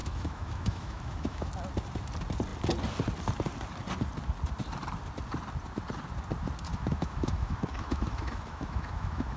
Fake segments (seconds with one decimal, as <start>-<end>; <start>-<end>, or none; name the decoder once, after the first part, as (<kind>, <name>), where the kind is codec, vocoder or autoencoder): 0.0-1.5 (autoencoder, DAC-VAE); 6.7-9.4